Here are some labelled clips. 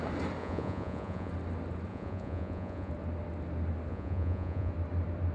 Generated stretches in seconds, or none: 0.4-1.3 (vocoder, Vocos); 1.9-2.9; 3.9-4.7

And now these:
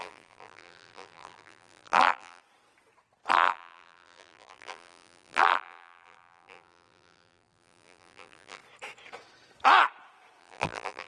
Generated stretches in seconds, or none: 0.0-2.4 (vocoder, BigVGAN v2); 3.3-8.6; 10.4-11.1

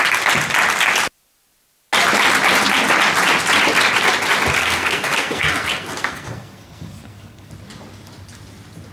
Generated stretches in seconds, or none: 4.6-7.5 (codec, SNAC)

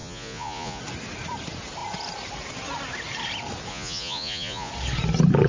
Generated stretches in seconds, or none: 0.0-0.8 (vocoder, Vocos); 3.7-4.7